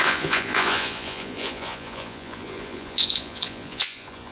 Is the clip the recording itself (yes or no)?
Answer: no